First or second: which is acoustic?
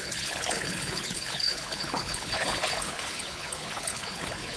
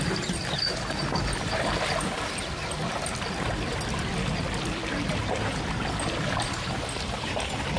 second